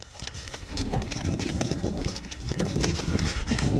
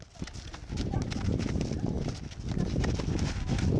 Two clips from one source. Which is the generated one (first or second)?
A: first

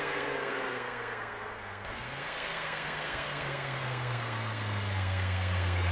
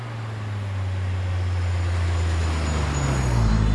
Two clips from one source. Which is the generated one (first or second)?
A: first